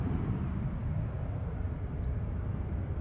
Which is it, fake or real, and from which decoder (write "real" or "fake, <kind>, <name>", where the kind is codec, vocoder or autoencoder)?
real